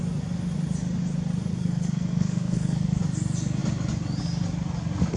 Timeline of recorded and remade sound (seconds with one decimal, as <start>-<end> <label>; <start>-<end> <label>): 0.0-1.5 recorded; 1.5-3.0 remade; 3.0-5.2 recorded